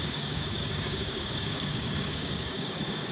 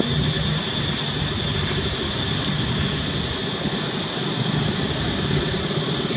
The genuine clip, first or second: second